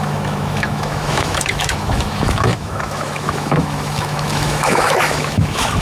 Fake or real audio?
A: fake